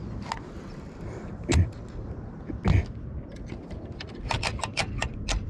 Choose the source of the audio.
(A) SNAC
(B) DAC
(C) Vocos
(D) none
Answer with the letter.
D